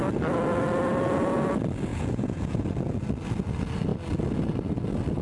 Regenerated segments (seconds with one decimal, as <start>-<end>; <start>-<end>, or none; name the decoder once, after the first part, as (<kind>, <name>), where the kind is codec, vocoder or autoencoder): 1.9-2.6 (vocoder, Vocos)

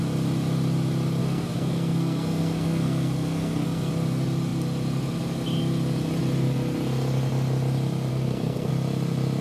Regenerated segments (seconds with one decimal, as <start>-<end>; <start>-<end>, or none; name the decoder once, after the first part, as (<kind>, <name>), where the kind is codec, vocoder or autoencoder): 1.2-3.9 (codec, SNAC); 8.1-8.7

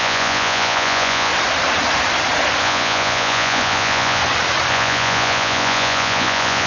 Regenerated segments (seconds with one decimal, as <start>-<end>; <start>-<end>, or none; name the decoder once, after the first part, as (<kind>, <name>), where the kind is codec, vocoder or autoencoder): 0.0-1.3 (vocoder, Vocos); 2.6-4.2; 4.7-6.7

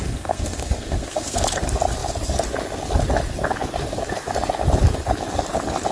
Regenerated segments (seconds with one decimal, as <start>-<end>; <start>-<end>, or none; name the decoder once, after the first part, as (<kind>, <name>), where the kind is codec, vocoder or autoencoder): 0.0-1.4 (codec, SNAC)

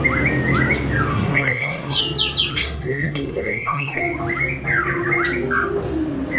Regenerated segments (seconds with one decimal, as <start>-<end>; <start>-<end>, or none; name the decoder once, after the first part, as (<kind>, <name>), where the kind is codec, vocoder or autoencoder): 1.1-2.0 (codec, SNAC); 2.5-4.0